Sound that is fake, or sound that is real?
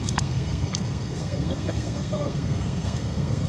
fake